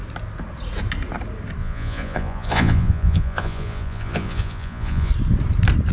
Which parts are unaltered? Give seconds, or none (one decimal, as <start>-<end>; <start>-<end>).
0.0-1.6; 5.1-5.9